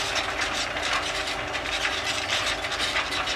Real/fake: real